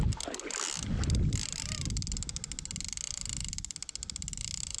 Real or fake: real